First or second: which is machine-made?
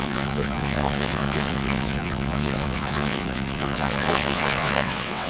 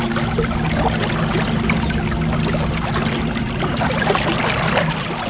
first